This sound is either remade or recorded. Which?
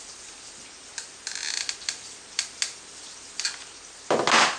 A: recorded